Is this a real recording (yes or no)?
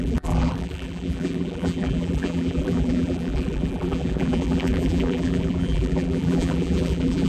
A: no